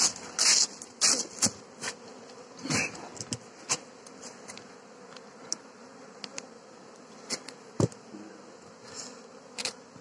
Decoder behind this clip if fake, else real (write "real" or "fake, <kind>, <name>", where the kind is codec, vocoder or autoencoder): real